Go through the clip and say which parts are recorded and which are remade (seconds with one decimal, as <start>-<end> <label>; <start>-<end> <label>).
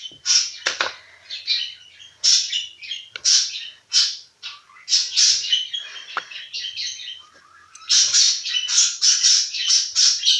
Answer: 0.0-10.4 recorded